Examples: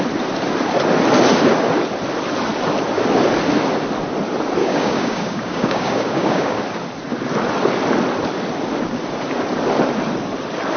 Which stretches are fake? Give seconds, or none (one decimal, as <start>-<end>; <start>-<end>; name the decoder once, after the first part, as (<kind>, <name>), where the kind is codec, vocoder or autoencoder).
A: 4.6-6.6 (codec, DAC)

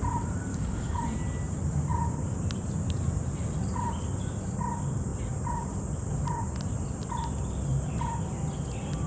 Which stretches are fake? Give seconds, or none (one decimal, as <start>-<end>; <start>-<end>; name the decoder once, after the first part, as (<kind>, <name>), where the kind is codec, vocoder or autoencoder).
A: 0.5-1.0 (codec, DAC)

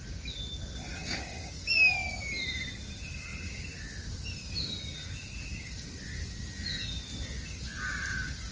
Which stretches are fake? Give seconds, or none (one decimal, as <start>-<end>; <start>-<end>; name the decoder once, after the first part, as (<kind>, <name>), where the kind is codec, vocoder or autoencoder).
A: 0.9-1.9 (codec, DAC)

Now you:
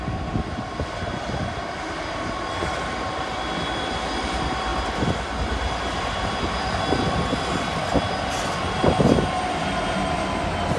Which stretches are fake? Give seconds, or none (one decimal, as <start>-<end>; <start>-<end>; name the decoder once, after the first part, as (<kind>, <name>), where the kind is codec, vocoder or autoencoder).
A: none